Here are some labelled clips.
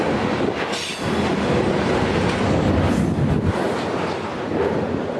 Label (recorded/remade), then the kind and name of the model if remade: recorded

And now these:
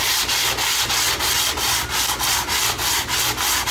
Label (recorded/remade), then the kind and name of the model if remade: recorded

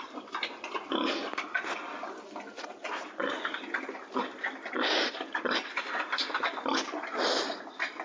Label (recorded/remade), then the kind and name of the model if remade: recorded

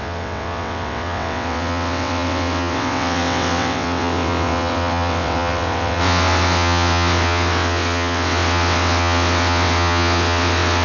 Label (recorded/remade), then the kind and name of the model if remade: remade, vocoder, WaveNeXt